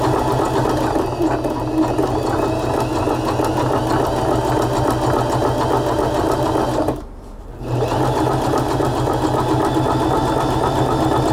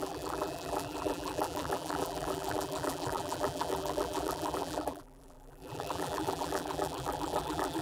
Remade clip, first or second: second